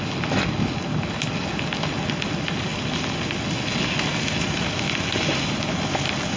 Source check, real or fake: real